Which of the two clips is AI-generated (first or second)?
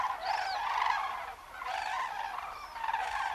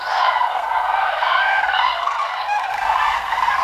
second